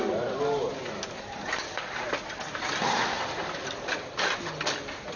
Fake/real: real